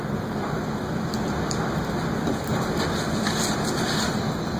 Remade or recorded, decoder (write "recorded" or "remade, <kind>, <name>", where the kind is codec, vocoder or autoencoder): recorded